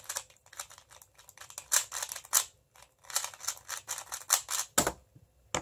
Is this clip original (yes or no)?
yes